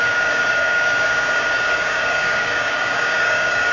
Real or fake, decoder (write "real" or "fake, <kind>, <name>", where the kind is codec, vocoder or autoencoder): fake, codec, DAC